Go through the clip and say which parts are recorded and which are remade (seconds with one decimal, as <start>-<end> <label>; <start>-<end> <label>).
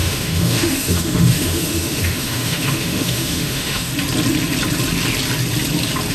0.0-3.9 remade; 3.9-6.1 recorded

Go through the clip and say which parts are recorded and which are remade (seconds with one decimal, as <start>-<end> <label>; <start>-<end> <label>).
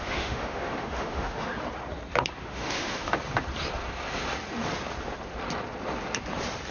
0.0-1.5 remade; 1.5-2.4 recorded; 2.4-3.1 remade; 3.1-6.7 recorded